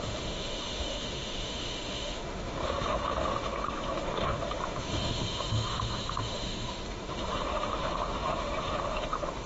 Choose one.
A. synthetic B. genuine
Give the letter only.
A